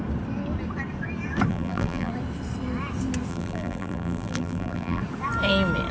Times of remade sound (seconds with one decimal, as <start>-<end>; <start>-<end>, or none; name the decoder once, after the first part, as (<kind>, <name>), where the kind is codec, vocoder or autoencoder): 1.5-2.1 (vocoder, BigVGAN v2); 3.3-5.0